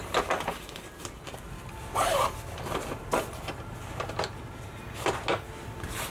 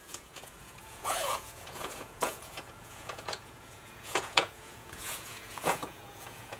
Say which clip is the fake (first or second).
second